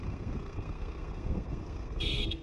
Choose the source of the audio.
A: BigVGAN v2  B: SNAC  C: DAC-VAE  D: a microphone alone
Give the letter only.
B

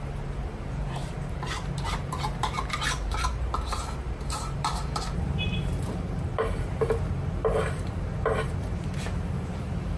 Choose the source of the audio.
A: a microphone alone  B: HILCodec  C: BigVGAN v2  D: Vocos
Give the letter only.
C